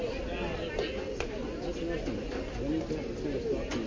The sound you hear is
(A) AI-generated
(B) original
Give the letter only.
B